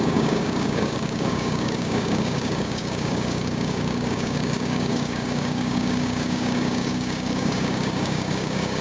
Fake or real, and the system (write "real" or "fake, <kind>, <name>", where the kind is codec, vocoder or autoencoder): fake, codec, DAC